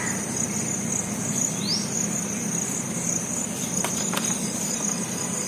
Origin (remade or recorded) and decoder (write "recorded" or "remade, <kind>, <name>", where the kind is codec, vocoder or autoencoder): recorded